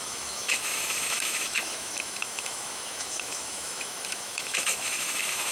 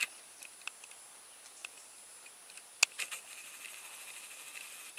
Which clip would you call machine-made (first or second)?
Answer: first